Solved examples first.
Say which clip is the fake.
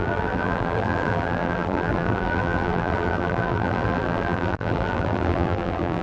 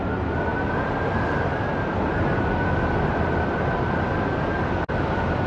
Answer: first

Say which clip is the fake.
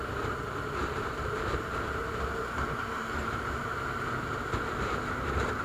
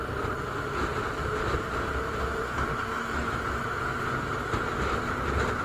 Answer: first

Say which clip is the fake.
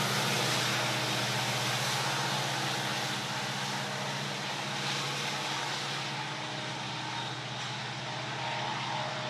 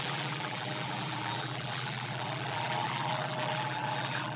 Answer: second